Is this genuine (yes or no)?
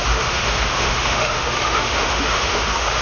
no